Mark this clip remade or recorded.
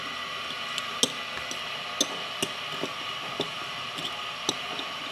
recorded